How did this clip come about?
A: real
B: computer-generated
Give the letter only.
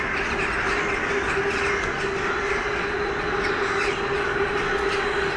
A